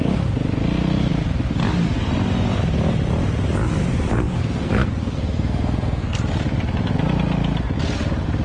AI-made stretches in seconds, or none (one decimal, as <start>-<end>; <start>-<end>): 4.1-6.2